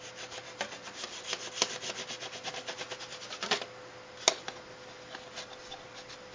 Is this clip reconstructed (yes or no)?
no